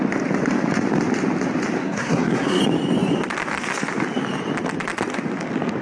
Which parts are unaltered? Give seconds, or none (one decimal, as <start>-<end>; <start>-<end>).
0.0-1.8; 2.6-5.8